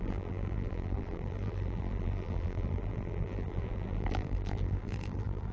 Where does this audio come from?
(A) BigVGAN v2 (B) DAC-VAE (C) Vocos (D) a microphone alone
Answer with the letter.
A